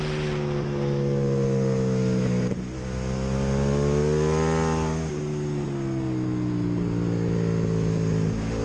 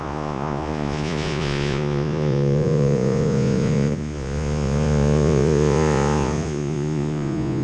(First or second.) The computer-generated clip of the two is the second